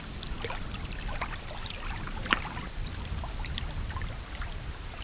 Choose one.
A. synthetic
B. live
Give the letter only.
A